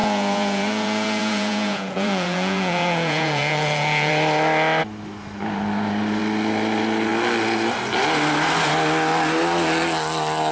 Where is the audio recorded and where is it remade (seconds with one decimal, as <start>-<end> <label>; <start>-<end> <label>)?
0.0-4.1 remade; 4.1-10.5 recorded

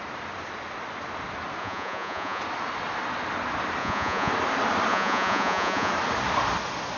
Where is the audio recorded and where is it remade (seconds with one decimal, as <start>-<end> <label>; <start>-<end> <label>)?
0.0-1.6 recorded; 1.6-2.4 remade; 2.4-3.8 recorded; 3.8-4.3 remade; 4.3-4.9 recorded; 4.9-5.9 remade; 5.9-7.0 recorded

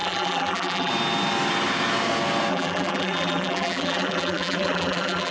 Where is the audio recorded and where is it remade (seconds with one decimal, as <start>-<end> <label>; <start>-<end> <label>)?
0.0-0.9 remade; 0.9-2.5 recorded; 2.5-5.3 remade

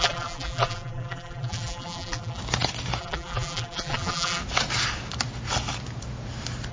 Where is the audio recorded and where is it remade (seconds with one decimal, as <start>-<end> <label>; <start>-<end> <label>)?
0.0-2.4 remade; 2.4-3.0 recorded; 3.0-4.4 remade; 4.4-6.7 recorded

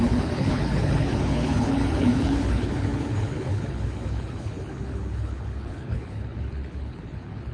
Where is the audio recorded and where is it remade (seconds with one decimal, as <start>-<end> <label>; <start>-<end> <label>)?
0.0-7.5 remade